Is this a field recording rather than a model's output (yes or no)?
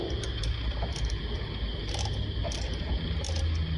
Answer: yes